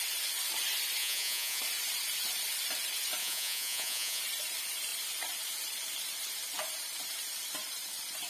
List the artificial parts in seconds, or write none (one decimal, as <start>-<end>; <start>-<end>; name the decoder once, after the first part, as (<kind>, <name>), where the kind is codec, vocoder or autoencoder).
1.0-1.6 (vocoder, Vocos); 3.2-4.2